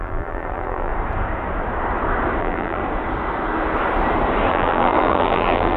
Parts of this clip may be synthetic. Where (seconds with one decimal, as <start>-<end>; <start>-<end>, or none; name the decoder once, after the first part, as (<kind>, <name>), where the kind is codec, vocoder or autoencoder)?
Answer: 0.0-0.9 (vocoder, BigVGAN v2); 2.4-2.8; 4.5-5.8